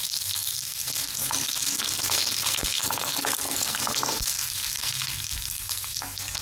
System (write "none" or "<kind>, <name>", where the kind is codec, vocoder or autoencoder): codec, SNAC